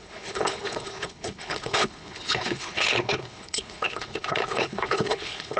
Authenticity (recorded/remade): remade